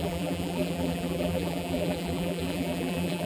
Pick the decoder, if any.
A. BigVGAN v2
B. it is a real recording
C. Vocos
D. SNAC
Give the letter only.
A